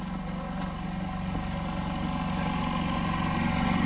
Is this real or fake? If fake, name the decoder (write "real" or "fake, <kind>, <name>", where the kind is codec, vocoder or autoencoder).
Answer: real